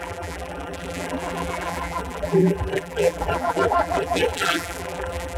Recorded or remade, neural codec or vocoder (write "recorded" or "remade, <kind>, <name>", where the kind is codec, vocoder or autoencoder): remade, vocoder, BigVGAN v2